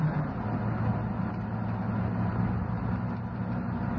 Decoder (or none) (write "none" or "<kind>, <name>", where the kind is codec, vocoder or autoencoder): none